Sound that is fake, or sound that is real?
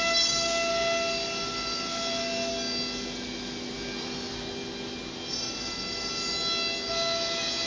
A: real